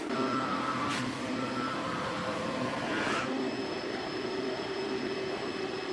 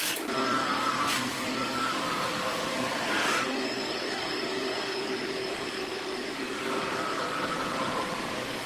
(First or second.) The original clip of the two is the first